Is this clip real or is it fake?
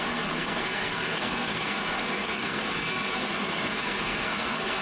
fake